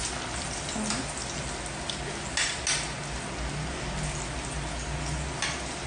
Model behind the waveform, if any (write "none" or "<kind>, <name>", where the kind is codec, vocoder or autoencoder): none